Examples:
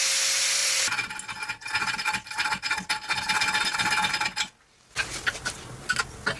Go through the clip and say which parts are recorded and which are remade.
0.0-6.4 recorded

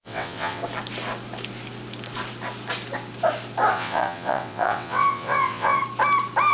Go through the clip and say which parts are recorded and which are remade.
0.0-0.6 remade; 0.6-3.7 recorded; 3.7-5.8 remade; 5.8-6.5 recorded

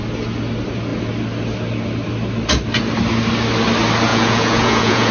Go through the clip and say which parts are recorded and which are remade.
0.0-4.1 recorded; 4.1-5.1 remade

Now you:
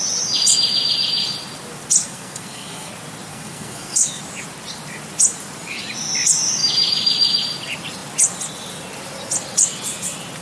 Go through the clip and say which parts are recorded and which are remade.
0.0-2.0 recorded; 2.0-2.9 remade; 2.9-3.3 recorded; 3.3-4.2 remade; 4.2-10.4 recorded

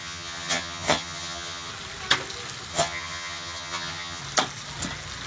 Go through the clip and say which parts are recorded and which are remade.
0.0-1.7 remade; 1.7-2.7 recorded; 2.7-4.2 remade; 4.2-5.3 recorded